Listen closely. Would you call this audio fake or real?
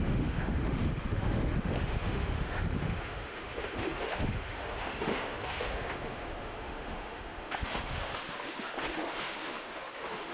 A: fake